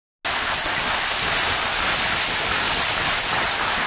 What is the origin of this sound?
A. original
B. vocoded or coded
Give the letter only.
A